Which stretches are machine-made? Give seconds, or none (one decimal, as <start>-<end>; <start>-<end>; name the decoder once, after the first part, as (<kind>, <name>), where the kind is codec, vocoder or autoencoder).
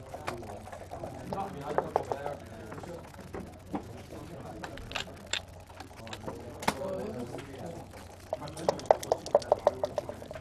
2.5-4.5 (vocoder, Vocos)